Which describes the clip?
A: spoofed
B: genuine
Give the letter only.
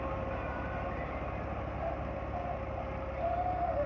B